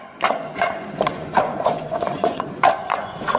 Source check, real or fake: fake